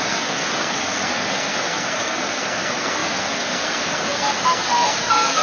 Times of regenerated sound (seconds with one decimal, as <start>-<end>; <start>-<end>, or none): 0.0-5.4